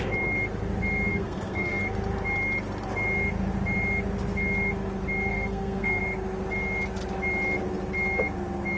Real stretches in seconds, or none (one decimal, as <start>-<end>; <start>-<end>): 0.0-1.1; 1.8-5.3; 6.0-8.8